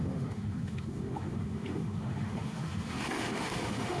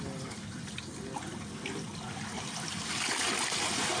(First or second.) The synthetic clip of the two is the first